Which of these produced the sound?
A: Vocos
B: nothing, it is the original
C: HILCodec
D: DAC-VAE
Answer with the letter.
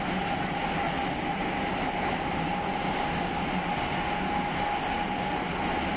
B